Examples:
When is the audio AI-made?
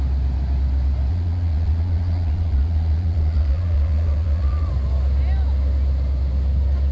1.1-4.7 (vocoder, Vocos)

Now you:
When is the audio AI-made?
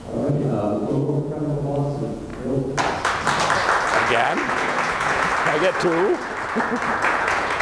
0.0-2.3 (vocoder, Vocos); 4.5-5.3; 6.9-7.6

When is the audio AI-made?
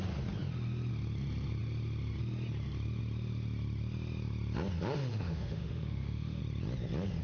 5.1-6.4 (autoencoder, DAC-VAE)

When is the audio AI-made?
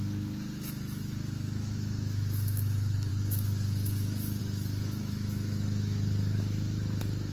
0.0-7.3 (autoencoder, DAC-VAE)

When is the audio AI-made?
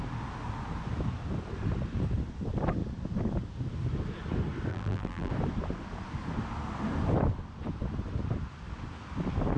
4.7-5.3 (vocoder, BigVGAN v2)